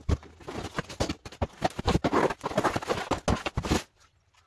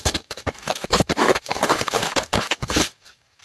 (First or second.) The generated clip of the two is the second